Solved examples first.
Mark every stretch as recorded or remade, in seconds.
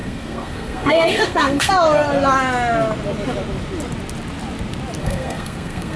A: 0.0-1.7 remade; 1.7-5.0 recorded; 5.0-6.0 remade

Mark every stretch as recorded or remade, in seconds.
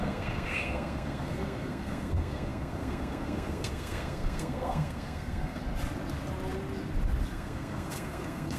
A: 0.0-5.6 remade; 5.6-7.3 recorded; 7.3-8.6 remade